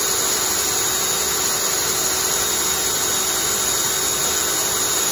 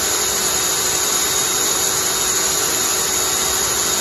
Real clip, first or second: first